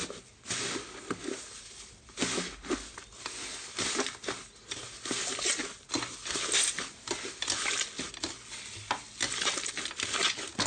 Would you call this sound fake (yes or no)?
no